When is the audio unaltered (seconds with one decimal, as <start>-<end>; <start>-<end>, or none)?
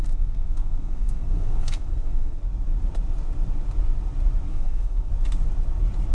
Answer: 2.4-4.5; 5.1-6.1